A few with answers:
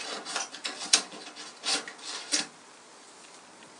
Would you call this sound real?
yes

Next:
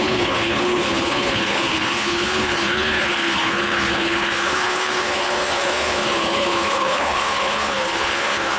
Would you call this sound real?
no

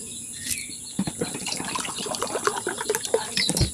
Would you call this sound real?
yes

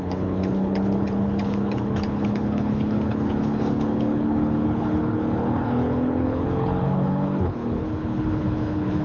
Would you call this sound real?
no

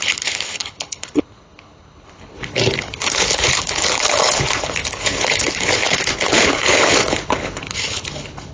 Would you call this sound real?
no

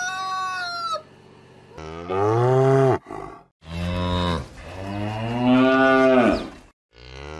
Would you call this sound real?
yes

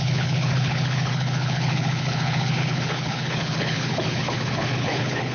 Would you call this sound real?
no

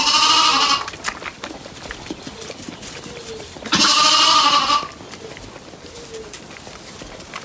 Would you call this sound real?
yes